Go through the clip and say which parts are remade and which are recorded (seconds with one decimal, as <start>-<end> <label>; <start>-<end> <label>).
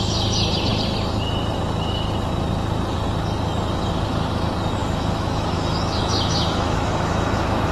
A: 0.0-4.8 recorded; 4.8-7.7 remade